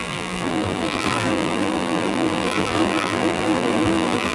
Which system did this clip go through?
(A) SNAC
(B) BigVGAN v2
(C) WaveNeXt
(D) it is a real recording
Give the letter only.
B